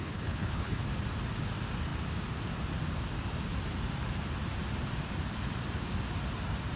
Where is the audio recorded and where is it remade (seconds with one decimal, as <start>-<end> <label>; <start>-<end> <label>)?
0.0-0.8 remade; 0.8-6.8 recorded